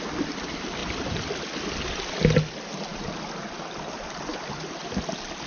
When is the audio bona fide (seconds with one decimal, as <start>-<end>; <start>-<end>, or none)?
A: 0.0-5.5